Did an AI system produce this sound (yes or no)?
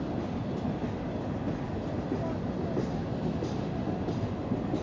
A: no